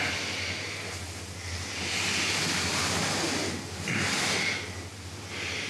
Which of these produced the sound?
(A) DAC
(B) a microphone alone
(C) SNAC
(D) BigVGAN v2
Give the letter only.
B